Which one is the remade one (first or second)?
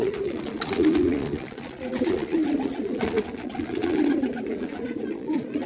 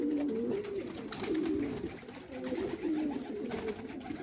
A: first